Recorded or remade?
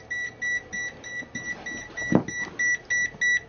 recorded